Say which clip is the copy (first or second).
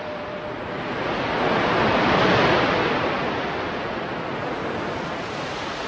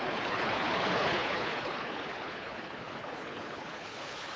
second